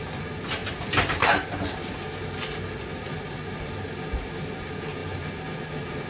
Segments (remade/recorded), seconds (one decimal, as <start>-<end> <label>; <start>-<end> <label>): 0.0-6.1 recorded